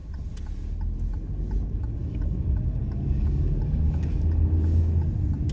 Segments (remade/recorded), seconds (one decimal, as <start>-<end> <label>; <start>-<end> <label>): 0.0-2.0 recorded; 2.0-5.1 remade; 5.1-5.5 recorded